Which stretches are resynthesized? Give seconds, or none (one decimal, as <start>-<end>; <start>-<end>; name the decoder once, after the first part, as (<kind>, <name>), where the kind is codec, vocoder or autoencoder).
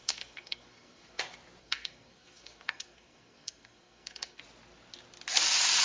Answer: 0.0-1.2 (codec, SNAC); 1.6-4.4